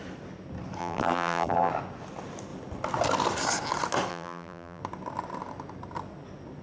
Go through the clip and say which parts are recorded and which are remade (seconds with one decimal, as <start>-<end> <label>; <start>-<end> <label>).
0.0-0.8 recorded; 0.8-1.7 remade; 1.7-4.1 recorded; 4.1-4.8 remade; 4.8-6.6 recorded